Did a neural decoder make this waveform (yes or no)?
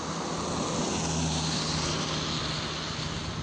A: no